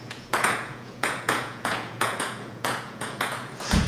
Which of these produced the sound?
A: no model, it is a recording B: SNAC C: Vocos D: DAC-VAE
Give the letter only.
C